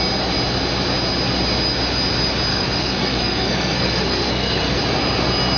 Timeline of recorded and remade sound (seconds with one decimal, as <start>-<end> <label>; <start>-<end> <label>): 0.0-2.5 recorded; 2.5-4.8 remade; 4.8-5.6 recorded